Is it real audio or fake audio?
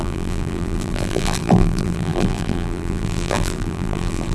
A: fake